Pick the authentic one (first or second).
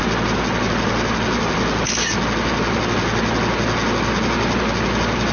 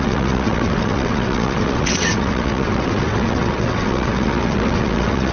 first